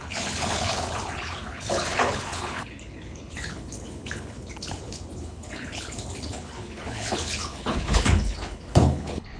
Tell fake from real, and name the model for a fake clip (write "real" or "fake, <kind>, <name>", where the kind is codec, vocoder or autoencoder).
fake, codec, HILCodec